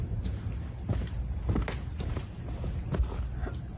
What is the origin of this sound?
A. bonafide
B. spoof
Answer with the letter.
A